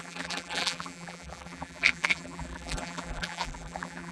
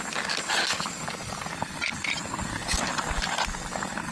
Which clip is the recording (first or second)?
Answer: second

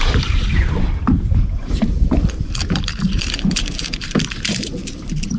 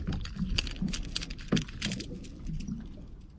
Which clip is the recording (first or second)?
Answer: second